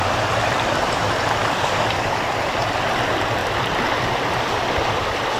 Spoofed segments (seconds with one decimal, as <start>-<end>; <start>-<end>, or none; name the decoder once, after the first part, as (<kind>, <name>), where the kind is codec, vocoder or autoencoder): 1.4-2.2 (codec, DAC)